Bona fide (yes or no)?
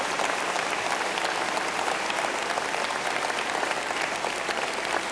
no